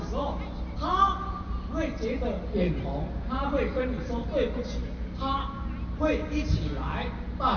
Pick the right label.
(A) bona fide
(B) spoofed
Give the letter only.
A